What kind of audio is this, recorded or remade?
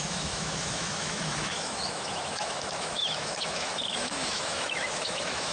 remade